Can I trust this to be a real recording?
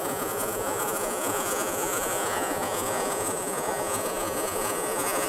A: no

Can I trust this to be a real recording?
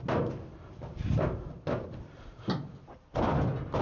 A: yes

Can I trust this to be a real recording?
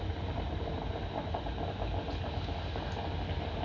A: yes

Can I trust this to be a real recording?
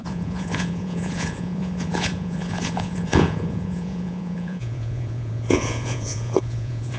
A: no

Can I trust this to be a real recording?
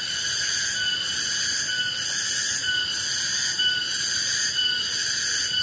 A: yes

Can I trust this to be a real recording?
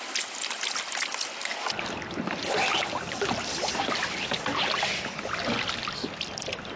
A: yes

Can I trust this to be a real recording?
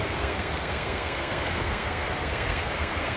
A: no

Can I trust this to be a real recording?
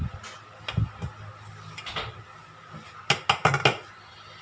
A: yes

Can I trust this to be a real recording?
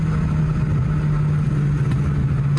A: yes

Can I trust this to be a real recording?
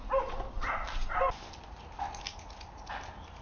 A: yes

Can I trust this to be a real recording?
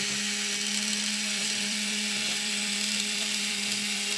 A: no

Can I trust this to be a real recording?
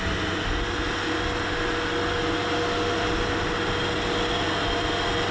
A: yes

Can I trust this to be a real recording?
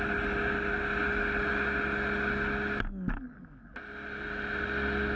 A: yes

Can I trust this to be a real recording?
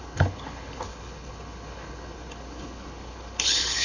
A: no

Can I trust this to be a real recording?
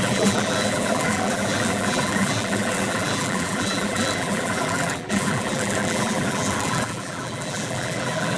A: no